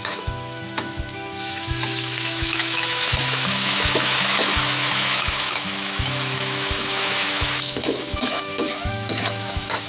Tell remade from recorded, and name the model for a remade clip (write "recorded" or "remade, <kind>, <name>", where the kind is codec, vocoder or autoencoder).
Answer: remade, autoencoder, DAC-VAE